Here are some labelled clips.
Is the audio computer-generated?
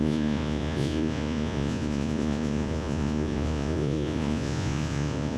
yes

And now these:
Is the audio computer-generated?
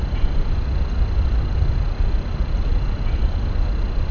no